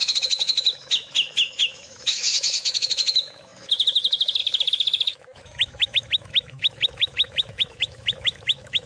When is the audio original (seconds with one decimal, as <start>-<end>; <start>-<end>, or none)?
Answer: none